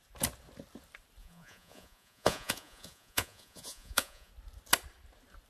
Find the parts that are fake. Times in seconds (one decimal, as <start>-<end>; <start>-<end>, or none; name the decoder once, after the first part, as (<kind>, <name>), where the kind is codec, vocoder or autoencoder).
1.2-4.3 (vocoder, Vocos)

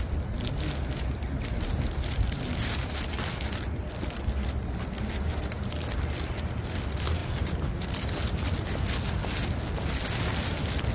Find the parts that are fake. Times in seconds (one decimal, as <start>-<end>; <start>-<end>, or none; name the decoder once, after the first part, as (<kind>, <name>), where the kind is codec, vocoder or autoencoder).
none

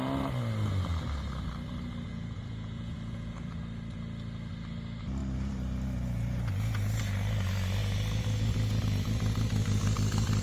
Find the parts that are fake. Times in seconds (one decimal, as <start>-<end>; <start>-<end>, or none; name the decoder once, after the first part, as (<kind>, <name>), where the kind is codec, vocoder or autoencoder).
2.1-3.6 (vocoder, Vocos)

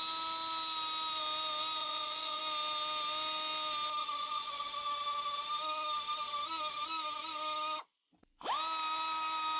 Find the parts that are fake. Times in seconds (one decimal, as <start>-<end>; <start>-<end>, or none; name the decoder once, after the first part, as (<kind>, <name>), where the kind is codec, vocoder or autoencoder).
1.8-2.4 (vocoder, Vocos); 4.0-4.7

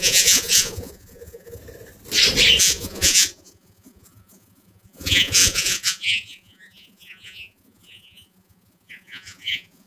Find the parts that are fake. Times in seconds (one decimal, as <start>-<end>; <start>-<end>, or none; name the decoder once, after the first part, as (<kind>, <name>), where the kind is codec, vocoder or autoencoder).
0.0-1.6 (vocoder, Vocos); 2.6-9.9

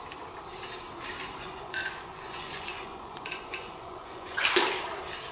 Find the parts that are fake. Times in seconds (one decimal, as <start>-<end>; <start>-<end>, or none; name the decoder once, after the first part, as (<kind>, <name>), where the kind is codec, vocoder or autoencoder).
1.2-4.4 (vocoder, Vocos)

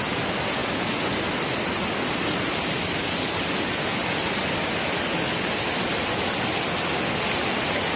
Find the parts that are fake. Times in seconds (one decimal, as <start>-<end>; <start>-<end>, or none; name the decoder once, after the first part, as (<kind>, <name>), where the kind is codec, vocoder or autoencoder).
none

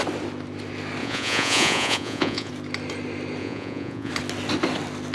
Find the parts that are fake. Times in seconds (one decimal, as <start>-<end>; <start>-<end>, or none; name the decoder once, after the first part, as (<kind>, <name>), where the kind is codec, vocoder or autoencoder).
1.0-2.5 (vocoder, Vocos); 3.4-4.1